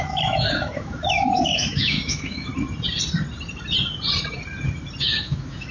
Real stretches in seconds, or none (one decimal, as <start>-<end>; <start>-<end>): 2.5-5.0